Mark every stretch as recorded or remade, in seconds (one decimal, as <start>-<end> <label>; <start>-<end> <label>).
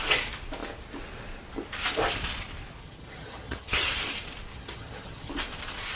0.0-2.8 recorded; 2.8-3.9 remade; 3.9-4.5 recorded; 4.5-5.3 remade; 5.3-6.0 recorded